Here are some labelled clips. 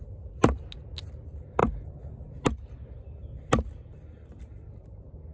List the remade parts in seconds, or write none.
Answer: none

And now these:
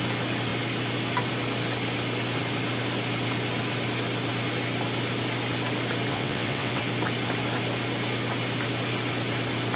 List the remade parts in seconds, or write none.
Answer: 6.1-6.8

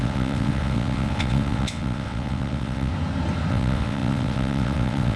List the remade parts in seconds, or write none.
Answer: 0.0-2.9; 3.5-5.2

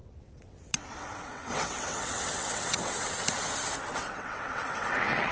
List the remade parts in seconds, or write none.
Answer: 0.0-3.2; 3.9-5.3

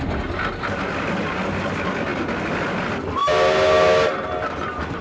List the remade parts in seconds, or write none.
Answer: none